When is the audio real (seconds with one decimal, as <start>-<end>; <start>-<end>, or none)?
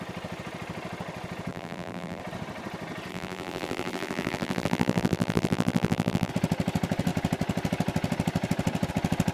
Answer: 0.0-1.5; 2.2-3.1; 6.3-9.3